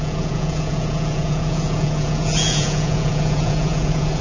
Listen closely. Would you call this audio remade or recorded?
remade